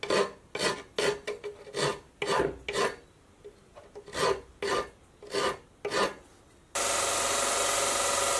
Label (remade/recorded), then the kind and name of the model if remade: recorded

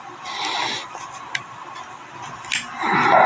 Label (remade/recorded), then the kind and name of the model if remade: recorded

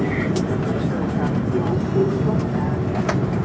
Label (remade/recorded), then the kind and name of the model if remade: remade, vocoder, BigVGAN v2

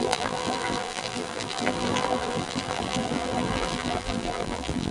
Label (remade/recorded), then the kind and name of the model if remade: remade, vocoder, BigVGAN v2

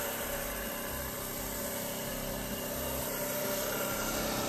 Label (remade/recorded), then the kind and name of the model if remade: remade, vocoder, BigVGAN v2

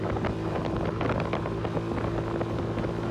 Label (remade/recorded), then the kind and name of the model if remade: recorded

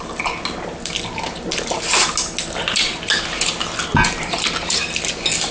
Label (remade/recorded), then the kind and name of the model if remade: recorded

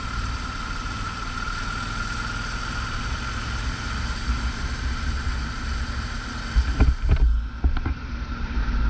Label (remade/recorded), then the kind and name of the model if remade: recorded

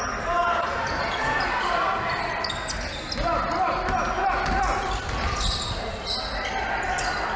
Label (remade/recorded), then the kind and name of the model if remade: recorded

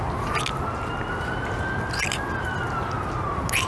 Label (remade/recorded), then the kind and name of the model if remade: recorded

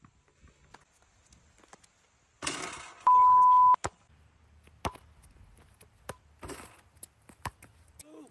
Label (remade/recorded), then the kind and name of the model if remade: recorded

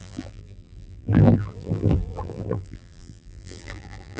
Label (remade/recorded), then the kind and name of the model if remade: remade, vocoder, BigVGAN v2